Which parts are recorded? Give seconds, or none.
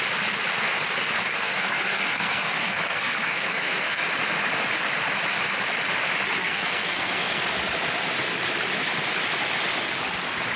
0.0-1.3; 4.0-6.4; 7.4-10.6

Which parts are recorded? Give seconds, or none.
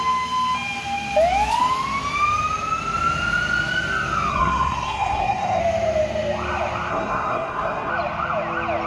0.0-4.3; 5.6-6.9; 7.9-8.9